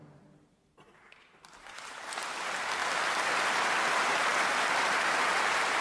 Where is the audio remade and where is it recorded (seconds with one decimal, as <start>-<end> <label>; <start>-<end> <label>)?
0.0-2.8 remade; 2.8-3.5 recorded; 3.5-4.3 remade; 4.3-4.9 recorded; 4.9-5.8 remade